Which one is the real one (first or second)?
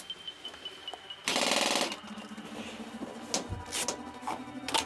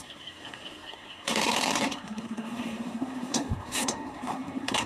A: first